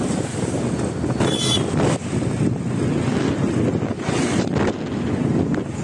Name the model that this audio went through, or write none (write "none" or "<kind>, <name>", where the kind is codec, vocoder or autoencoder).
none